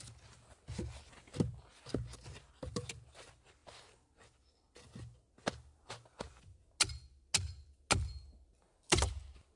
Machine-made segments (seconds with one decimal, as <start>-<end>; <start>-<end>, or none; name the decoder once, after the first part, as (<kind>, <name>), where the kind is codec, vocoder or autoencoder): none